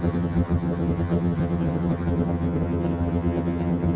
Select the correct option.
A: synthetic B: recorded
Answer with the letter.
A